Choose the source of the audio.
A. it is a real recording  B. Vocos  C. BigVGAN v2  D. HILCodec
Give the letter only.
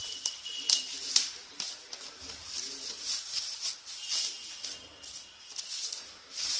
A